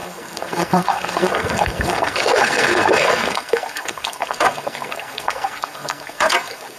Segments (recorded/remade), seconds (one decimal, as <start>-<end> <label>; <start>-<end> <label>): 0.0-6.8 remade

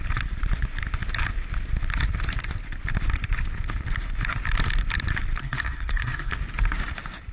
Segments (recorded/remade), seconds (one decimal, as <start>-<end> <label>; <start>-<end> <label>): 0.0-5.4 recorded; 5.4-6.3 remade; 6.3-7.3 recorded

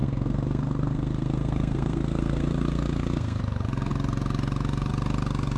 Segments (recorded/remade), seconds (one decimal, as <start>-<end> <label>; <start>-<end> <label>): 0.0-3.4 remade; 3.4-5.6 recorded

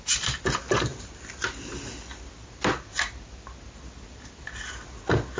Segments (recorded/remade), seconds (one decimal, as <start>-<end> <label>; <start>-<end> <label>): 0.0-5.4 recorded

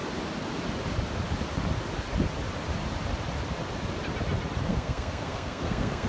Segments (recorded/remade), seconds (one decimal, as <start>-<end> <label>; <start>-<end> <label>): 0.0-4.7 recorded; 4.7-6.1 remade